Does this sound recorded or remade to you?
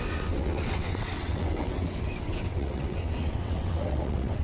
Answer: remade